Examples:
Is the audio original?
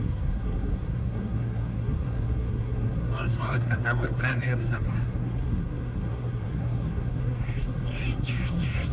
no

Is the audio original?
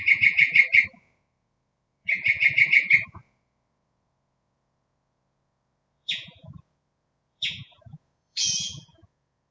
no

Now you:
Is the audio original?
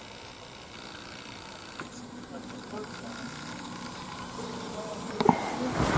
yes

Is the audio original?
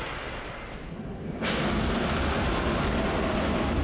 yes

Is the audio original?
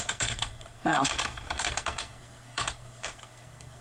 no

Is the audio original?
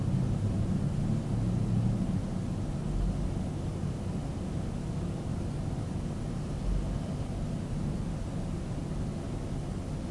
yes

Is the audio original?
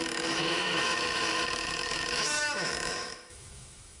no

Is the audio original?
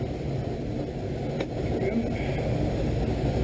yes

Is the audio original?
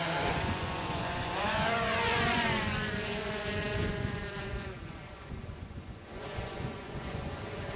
no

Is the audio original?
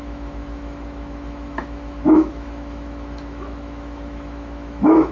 no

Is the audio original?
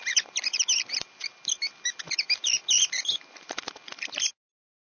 yes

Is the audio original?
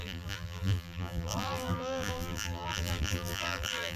no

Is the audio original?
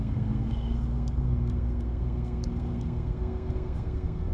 no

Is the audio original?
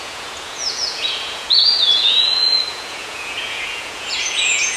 no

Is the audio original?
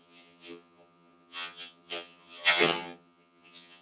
no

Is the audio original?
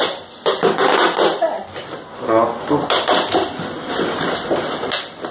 yes